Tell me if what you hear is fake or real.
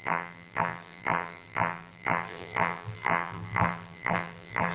fake